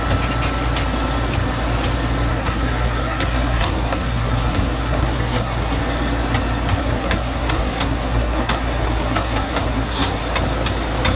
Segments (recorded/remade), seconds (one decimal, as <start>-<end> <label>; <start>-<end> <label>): 0.0-2.3 recorded; 2.3-5.8 remade; 5.8-6.8 recorded; 6.8-10.2 remade; 10.2-11.2 recorded